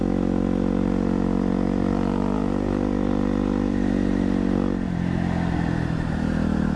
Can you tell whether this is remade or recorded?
recorded